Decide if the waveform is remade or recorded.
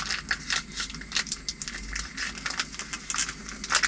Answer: recorded